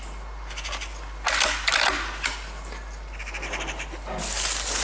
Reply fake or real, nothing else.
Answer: real